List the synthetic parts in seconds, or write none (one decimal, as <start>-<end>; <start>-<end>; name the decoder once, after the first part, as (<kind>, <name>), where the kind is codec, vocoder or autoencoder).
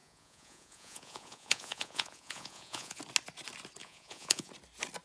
0.0-3.0 (vocoder, Vocos); 3.8-4.5